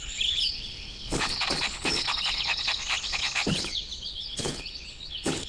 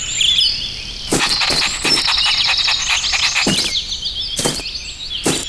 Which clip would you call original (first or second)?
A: second